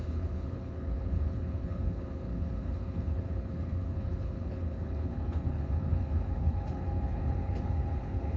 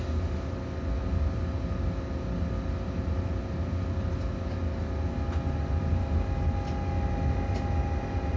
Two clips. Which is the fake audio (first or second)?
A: first